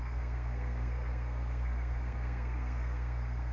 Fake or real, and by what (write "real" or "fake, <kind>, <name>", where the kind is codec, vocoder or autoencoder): fake, codec, SNAC